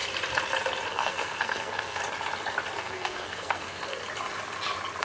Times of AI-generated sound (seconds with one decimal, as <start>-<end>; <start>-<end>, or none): 0.9-2.0; 2.8-4.0